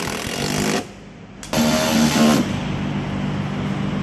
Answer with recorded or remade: recorded